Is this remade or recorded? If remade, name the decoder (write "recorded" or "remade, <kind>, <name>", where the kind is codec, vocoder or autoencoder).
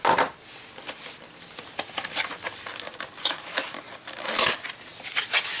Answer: recorded